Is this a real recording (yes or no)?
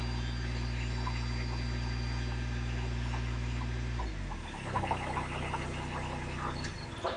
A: yes